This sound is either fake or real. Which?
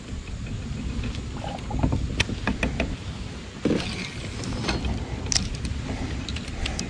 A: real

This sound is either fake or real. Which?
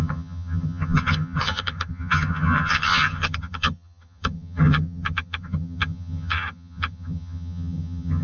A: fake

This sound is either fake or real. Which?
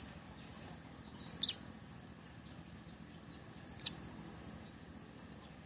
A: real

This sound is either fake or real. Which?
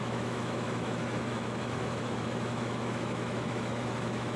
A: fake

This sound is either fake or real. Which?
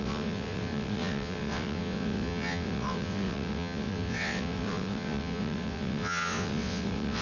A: fake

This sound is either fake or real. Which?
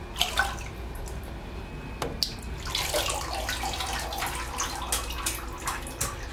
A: real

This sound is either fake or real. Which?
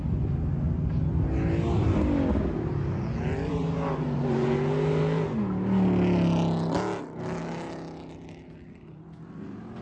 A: real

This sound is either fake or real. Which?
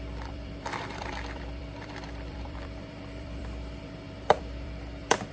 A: fake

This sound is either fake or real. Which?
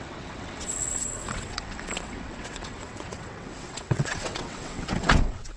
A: fake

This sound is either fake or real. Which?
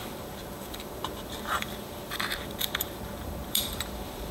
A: fake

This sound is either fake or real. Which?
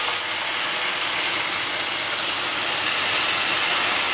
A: real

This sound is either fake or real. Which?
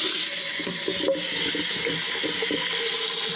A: real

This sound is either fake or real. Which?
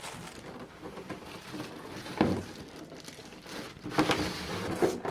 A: real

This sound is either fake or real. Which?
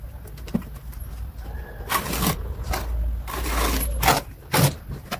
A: real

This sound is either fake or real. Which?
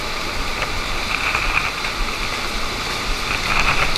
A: real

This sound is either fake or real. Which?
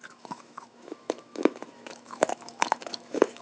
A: fake